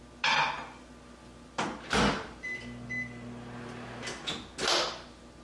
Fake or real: real